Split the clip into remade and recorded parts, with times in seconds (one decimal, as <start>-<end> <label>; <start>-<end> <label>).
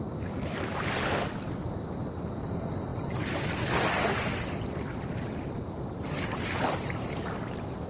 0.0-7.9 recorded